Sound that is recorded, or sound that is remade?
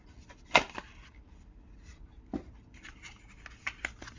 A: recorded